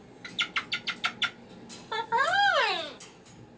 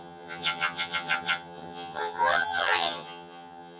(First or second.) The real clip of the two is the first